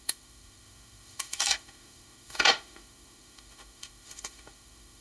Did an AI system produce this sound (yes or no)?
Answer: yes